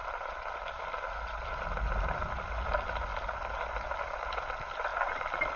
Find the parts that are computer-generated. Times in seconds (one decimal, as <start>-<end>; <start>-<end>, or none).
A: none